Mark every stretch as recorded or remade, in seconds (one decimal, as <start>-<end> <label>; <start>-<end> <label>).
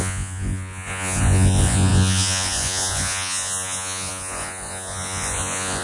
0.0-5.8 remade